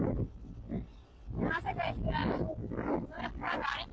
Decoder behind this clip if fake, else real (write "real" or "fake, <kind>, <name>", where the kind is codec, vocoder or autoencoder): real